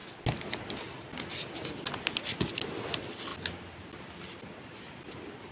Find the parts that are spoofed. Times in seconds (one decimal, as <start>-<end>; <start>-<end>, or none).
none